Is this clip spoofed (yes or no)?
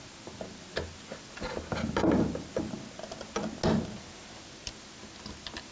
no